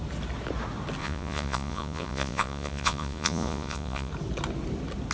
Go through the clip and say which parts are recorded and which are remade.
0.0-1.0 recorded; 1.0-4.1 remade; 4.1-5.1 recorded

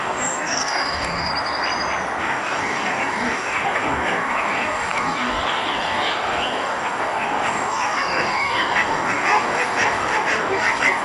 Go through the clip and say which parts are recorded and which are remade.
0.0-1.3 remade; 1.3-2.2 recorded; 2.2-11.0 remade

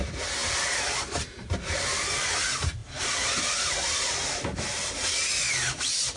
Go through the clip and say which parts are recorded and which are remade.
0.0-6.2 recorded

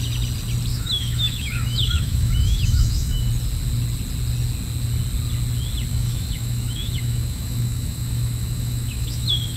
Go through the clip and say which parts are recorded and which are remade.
0.0-0.7 recorded; 0.7-3.3 remade; 3.3-5.9 recorded; 5.9-9.6 remade

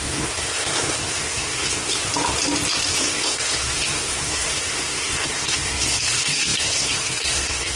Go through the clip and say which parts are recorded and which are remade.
0.0-2.0 remade; 2.0-2.9 recorded; 2.9-7.8 remade

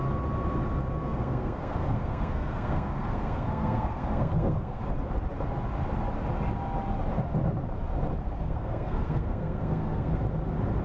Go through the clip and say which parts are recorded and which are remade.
0.0-1.0 recorded; 1.0-4.8 remade; 4.8-8.2 recorded; 8.2-10.2 remade; 10.2-10.8 recorded

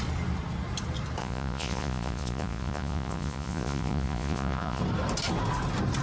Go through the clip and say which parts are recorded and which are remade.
0.0-1.2 recorded; 1.2-4.8 remade; 4.8-6.0 recorded